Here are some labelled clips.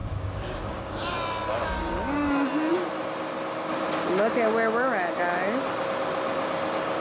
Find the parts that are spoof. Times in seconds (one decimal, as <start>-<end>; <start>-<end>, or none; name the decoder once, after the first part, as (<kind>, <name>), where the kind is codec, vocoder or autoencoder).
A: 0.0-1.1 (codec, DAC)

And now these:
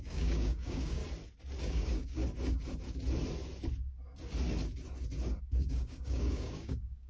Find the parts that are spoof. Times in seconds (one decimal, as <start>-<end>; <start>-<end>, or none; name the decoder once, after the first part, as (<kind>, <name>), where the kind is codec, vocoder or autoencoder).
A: 0.0-1.0 (codec, DAC); 1.6-2.2; 5.4-7.1

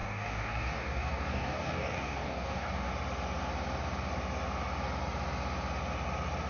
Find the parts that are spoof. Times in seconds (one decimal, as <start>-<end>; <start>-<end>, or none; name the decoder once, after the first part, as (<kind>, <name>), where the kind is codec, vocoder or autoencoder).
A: 0.0-2.9 (codec, DAC)